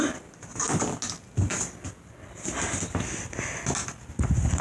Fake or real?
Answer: real